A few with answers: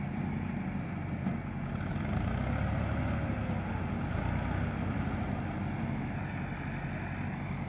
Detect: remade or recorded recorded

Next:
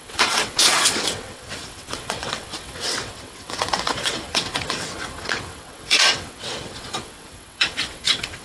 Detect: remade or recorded remade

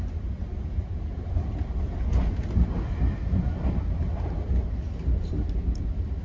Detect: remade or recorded recorded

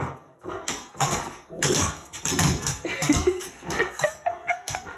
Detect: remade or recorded remade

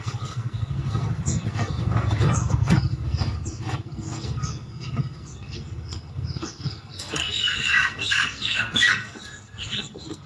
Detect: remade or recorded remade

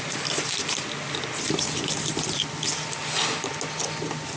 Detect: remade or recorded recorded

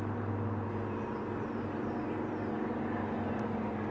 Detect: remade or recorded recorded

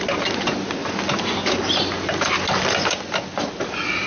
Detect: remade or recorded recorded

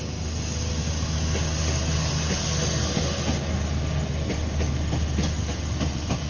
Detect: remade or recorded recorded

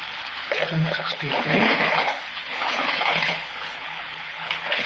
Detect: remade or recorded remade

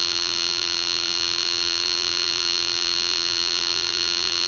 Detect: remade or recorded remade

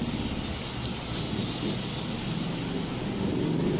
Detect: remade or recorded recorded